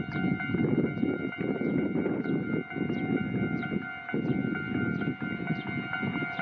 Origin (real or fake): real